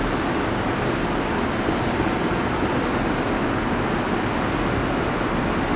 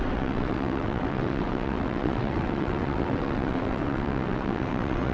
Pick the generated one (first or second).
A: second